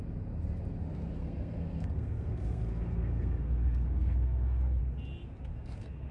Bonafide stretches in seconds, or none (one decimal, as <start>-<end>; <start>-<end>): 0.0-1.2; 4.8-5.5

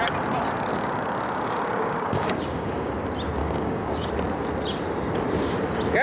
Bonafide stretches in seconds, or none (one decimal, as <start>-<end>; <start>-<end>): 0.0-0.7; 2.9-3.4; 4.1-6.0

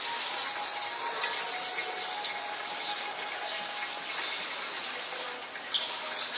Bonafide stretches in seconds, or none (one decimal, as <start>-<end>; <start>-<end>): 0.0-6.4

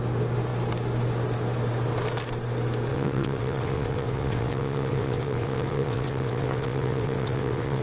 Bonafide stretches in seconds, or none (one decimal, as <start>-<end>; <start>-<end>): 0.0-2.9

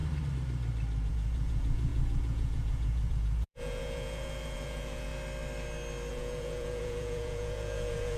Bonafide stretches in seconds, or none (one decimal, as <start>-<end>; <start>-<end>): 0.0-1.1; 5.1-6.1

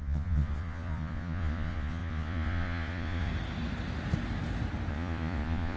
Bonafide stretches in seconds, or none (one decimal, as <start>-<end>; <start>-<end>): 3.3-4.9

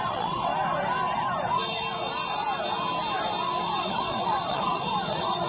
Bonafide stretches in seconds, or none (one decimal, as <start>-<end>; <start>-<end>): 0.5-3.8

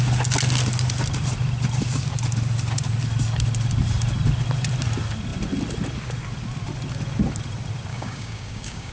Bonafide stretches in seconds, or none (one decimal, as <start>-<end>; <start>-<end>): 0.0-7.9